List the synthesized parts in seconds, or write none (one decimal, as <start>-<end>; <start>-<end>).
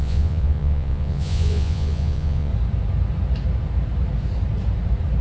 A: 0.0-2.5